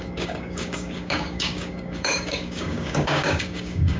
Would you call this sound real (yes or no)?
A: no